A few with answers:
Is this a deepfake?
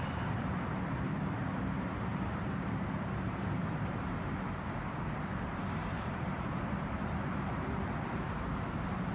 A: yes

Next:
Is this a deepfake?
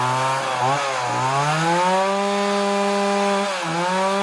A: no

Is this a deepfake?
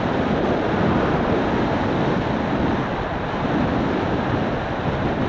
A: no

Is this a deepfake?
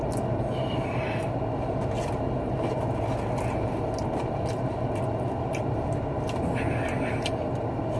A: no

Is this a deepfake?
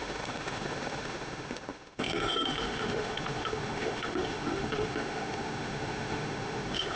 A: yes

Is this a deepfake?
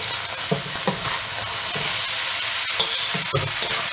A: no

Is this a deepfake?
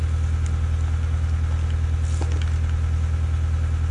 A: no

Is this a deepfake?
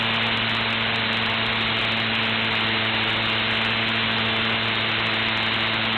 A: no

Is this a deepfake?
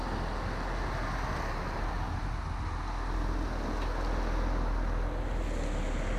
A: no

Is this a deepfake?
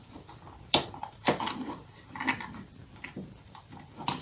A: yes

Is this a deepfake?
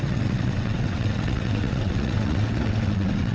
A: yes